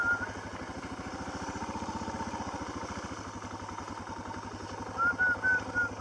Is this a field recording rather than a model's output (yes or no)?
yes